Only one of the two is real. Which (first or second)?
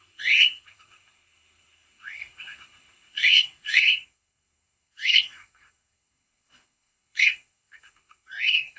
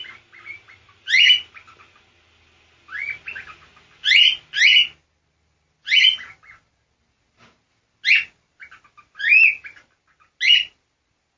second